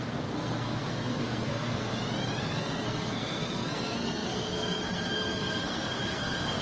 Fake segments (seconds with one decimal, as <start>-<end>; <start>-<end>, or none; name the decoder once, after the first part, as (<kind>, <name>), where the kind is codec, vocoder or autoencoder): 0.0-1.9 (codec, SNAC); 2.4-6.6